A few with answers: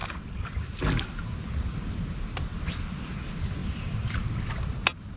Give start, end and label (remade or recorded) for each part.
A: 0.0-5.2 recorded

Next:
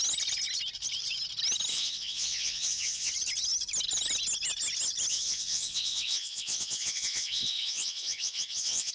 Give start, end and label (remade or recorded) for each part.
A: 0.0-1.7 recorded; 1.7-3.1 remade; 3.1-5.1 recorded; 5.1-8.9 remade

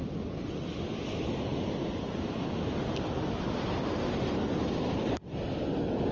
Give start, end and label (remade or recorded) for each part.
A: 0.0-6.1 recorded

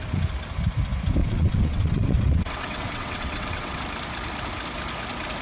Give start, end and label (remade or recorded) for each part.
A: 0.0-1.2 recorded; 1.2-3.8 remade; 3.8-5.4 recorded